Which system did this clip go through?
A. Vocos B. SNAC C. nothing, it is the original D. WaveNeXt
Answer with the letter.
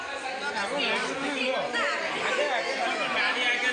C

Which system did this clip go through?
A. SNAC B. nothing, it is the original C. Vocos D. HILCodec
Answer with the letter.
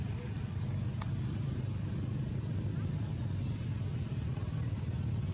B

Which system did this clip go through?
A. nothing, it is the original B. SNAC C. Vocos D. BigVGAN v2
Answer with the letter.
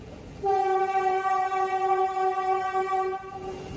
C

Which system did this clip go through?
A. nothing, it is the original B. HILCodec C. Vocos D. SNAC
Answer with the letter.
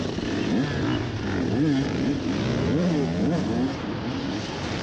A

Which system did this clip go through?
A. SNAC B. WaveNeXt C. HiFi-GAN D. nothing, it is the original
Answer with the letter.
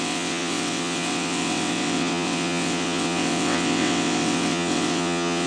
B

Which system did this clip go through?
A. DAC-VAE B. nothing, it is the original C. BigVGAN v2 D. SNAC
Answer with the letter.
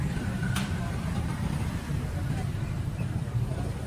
C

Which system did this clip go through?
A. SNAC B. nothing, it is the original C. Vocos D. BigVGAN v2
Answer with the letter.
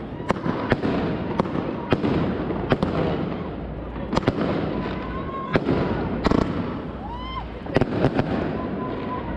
B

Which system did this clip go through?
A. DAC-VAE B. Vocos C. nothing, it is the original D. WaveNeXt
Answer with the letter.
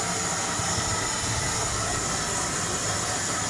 C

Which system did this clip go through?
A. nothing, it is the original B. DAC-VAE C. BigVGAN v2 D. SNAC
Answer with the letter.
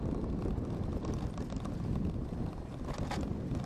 A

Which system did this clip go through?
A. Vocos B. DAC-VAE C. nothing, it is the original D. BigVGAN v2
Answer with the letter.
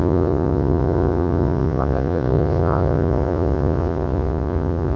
A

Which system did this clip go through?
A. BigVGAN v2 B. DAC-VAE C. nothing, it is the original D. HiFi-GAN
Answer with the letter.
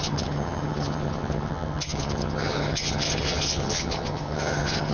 D